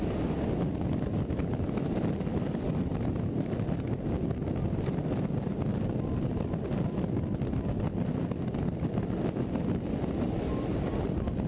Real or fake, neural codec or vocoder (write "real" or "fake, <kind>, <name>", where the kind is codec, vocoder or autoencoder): real